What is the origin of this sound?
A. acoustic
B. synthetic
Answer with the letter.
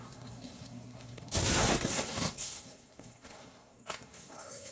B